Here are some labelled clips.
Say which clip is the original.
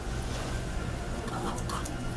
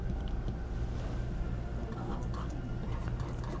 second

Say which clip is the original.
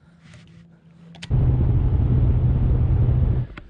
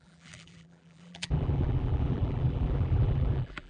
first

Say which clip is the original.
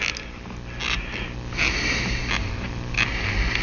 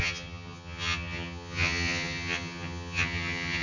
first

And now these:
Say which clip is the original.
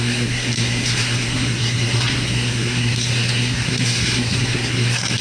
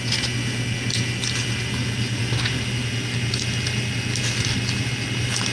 second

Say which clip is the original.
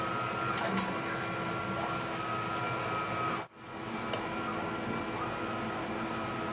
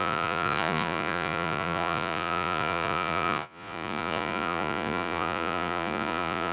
first